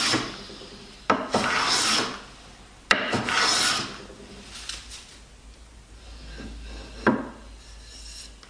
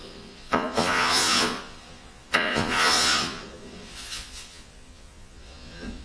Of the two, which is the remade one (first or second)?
second